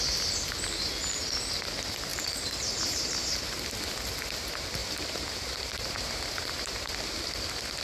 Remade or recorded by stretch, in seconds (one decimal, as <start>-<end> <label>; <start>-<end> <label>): 0.0-2.1 recorded; 2.1-3.4 remade; 3.4-4.8 recorded; 4.8-6.9 remade; 6.9-7.8 recorded